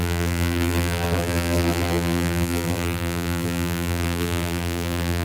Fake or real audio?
fake